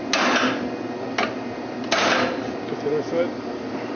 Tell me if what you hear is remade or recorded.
recorded